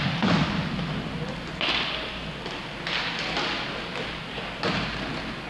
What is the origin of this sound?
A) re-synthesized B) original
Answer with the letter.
B